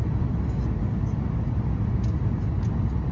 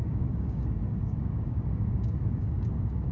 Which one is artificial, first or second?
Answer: second